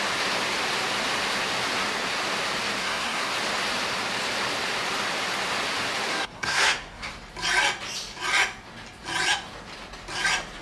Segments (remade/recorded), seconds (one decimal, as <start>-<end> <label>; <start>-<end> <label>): 0.0-2.8 recorded; 2.8-3.3 remade; 3.3-6.1 recorded; 6.1-7.1 remade; 7.1-10.6 recorded

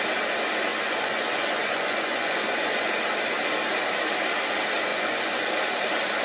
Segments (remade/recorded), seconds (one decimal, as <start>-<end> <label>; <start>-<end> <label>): 0.0-0.7 recorded; 0.7-2.9 remade; 2.9-4.9 recorded; 4.9-5.5 remade; 5.5-6.2 recorded

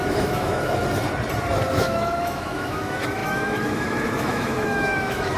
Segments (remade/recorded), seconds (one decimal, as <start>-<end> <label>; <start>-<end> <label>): 0.0-0.8 remade; 0.8-1.7 recorded; 1.7-5.4 remade